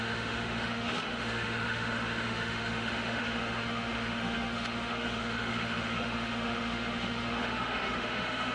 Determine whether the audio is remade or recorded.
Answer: remade